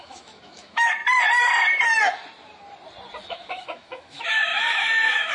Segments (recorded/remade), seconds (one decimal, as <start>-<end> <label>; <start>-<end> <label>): 0.0-1.0 remade; 1.0-3.2 recorded; 3.2-5.3 remade